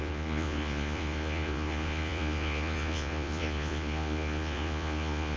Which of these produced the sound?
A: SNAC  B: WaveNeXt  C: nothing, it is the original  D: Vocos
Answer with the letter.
D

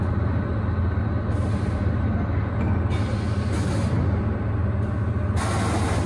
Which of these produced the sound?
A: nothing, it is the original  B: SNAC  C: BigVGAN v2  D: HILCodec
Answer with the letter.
A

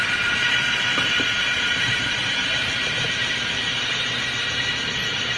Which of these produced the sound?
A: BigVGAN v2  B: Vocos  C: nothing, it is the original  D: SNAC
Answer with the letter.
A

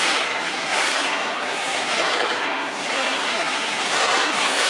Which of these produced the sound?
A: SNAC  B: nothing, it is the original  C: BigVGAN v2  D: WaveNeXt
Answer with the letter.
A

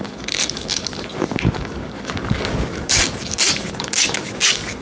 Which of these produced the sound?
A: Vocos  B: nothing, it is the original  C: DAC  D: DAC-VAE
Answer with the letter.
C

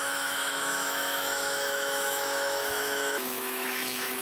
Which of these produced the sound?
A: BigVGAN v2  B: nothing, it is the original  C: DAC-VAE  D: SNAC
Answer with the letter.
C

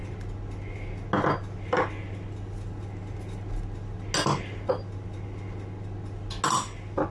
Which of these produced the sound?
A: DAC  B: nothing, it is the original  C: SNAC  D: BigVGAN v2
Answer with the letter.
B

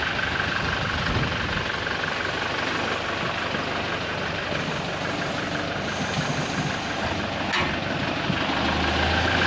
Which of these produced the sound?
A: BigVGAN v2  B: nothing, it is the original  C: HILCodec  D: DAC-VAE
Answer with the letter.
B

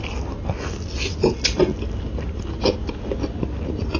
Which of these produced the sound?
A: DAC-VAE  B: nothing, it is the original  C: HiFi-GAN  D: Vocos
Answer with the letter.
B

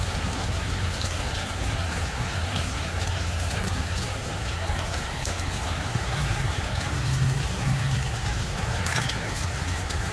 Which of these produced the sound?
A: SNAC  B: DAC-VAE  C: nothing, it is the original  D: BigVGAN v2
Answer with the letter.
A